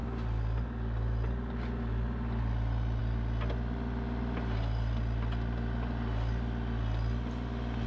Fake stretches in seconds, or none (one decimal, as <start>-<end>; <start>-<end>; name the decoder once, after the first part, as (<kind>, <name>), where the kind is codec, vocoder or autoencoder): none